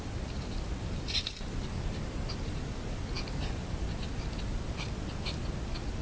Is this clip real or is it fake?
real